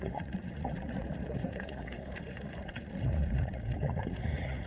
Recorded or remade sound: remade